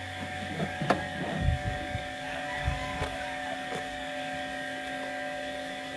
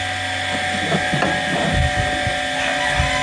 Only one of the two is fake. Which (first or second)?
first